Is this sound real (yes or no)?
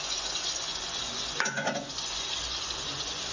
no